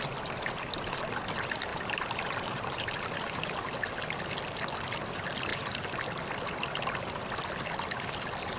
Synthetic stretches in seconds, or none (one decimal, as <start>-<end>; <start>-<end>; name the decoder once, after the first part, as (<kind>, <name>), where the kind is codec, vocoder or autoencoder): 1.7-3.0 (vocoder, BigVGAN v2); 5.5-6.0